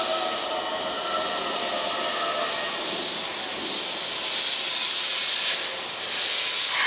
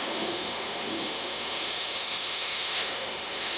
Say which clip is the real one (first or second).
first